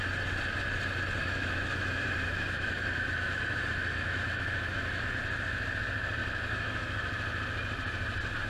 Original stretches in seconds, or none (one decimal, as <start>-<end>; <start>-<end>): 0.0-1.2; 5.2-6.2; 7.1-8.5